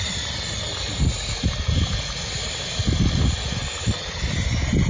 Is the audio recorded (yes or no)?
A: yes